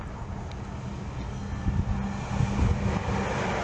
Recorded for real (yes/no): yes